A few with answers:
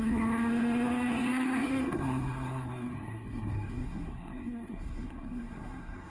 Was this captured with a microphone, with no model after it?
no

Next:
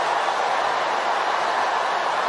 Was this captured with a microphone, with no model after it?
yes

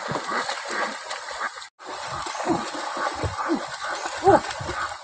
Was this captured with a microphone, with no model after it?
yes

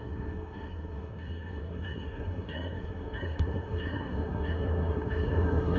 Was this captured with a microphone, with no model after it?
no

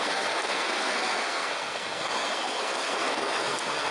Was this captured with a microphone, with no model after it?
no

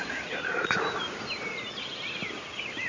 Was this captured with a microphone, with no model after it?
yes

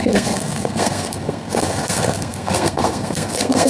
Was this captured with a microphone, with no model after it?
no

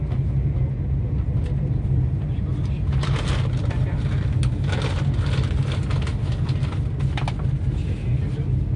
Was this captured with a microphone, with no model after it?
yes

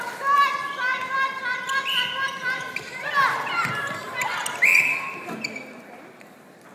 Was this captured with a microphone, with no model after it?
yes